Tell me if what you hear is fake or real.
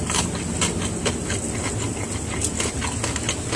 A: real